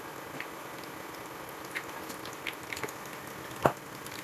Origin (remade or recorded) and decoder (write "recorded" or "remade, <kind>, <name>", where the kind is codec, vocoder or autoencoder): recorded